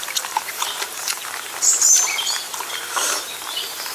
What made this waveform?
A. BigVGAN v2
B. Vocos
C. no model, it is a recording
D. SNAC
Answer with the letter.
A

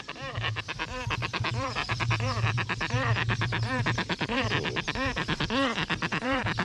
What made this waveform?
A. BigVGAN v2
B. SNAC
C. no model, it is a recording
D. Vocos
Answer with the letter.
A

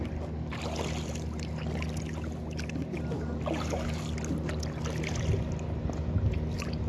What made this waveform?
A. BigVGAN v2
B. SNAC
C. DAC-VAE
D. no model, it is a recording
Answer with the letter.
D